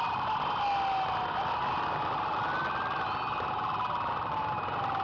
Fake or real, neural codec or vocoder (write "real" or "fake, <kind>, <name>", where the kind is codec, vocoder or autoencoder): real